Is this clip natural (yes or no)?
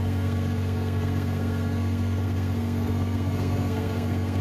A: no